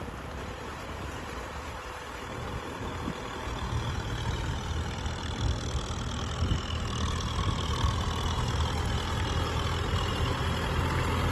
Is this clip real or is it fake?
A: real